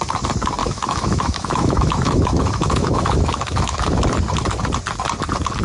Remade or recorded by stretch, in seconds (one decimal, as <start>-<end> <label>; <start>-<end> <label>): 0.0-0.6 recorded; 0.6-4.0 remade; 4.0-5.6 recorded